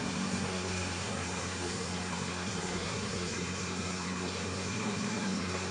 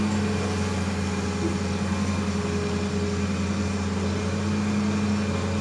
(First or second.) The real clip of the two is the second